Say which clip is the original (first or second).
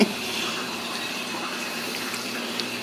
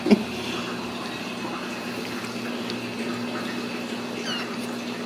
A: second